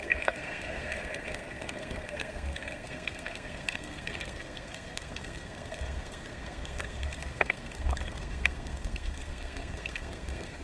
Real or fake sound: fake